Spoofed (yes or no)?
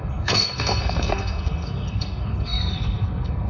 yes